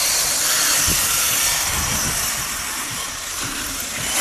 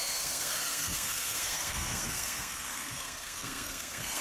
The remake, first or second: second